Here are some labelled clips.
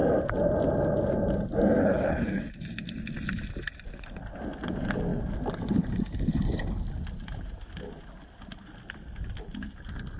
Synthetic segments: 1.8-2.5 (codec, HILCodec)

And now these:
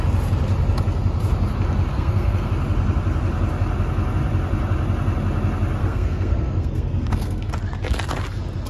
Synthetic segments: 1.9-2.5 (codec, SNAC); 5.8-7.5

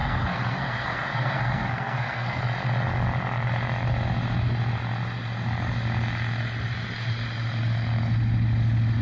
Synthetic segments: 0.0-2.4 (codec, SNAC)

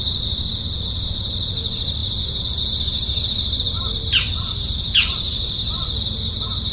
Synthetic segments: none

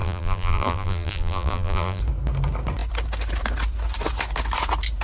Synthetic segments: 0.0-2.0 (vocoder, BigVGAN v2)